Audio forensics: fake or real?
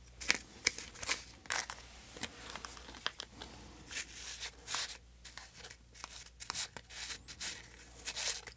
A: real